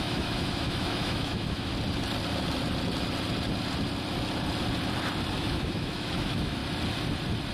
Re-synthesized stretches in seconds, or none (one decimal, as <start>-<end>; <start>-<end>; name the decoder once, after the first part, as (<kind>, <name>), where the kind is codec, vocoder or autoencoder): 0.0-1.7 (autoencoder, DAC-VAE); 5.3-6.6